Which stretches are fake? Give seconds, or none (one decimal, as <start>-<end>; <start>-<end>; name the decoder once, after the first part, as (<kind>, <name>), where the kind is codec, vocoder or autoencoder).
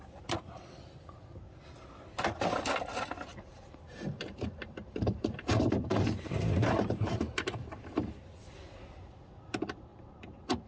3.3-8.2 (vocoder, BigVGAN v2); 9.9-10.7